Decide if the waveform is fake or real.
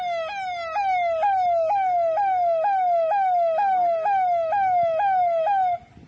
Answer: real